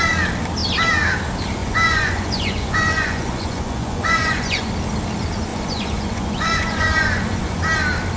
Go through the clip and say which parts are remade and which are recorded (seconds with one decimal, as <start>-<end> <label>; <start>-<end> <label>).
0.0-1.6 recorded; 1.6-4.7 remade; 4.7-5.5 recorded; 5.5-7.6 remade; 7.6-8.2 recorded

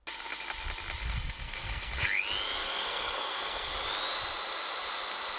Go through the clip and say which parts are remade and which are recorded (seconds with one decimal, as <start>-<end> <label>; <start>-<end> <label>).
0.0-1.0 recorded; 1.0-2.2 remade; 2.2-2.6 recorded; 2.6-3.7 remade; 3.7-5.4 recorded

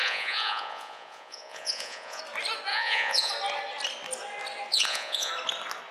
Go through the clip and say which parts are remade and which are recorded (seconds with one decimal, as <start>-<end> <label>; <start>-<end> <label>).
0.0-2.2 remade; 2.2-2.7 recorded; 2.7-3.3 remade; 3.3-4.7 recorded; 4.7-5.3 remade; 5.3-5.9 recorded

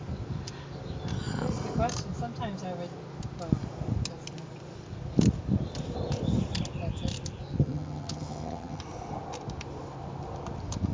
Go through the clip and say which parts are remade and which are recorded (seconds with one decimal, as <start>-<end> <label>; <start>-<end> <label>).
0.0-7.6 recorded; 7.6-8.8 remade; 8.8-10.9 recorded

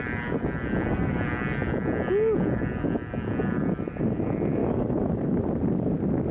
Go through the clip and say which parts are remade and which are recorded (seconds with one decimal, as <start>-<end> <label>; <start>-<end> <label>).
0.0-4.6 recorded; 4.6-5.4 remade; 5.4-6.3 recorded

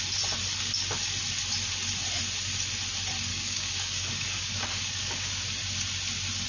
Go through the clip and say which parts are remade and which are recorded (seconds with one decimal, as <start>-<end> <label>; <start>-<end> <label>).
0.0-3.3 recorded; 3.3-5.3 remade; 5.3-6.5 recorded